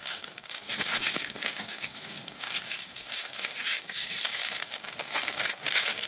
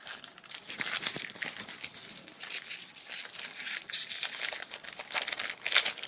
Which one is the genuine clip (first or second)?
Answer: second